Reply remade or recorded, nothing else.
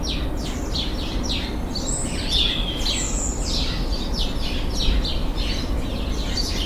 recorded